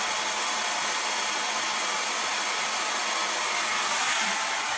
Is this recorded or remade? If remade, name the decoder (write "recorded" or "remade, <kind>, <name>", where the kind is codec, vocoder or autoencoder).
recorded